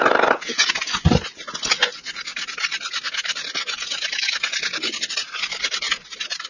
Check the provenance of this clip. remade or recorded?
recorded